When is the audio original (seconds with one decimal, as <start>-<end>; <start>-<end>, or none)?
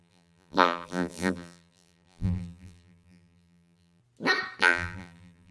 4.0-4.6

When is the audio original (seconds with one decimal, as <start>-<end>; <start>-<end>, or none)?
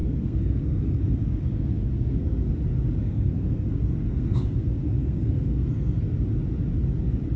2.5-3.0; 6.1-7.4